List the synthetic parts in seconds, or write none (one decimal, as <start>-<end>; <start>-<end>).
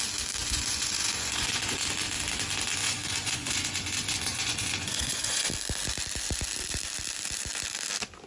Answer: 0.4-1.9; 2.8-5.5